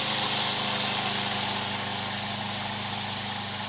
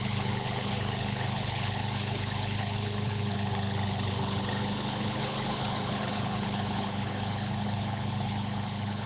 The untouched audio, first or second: first